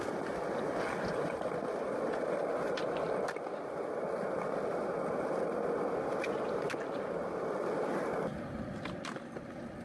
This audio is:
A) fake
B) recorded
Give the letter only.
B